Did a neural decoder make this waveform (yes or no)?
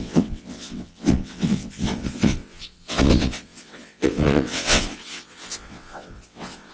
yes